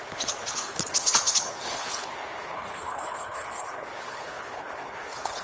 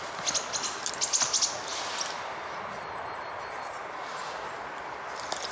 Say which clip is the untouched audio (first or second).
second